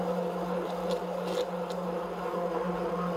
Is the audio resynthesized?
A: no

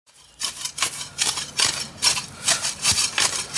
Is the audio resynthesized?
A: yes